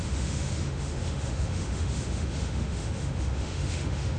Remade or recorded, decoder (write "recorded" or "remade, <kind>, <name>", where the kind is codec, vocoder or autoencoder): remade, autoencoder, DAC-VAE